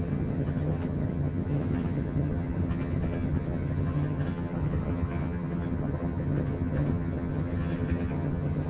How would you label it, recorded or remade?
remade